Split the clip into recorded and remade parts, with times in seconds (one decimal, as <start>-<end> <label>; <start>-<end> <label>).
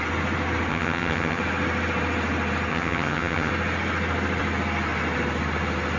0.0-0.7 recorded; 0.7-1.4 remade; 1.4-2.7 recorded; 2.7-3.5 remade; 3.5-6.0 recorded